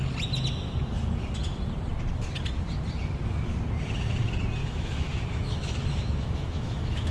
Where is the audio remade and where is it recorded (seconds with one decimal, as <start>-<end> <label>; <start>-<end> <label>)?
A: 0.0-4.6 recorded; 4.6-7.1 remade